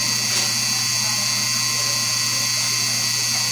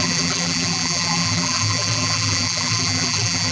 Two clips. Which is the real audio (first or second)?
first